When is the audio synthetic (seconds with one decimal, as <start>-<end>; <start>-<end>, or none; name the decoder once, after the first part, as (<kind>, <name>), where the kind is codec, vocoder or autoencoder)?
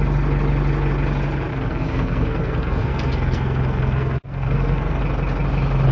1.5-5.0 (codec, SNAC)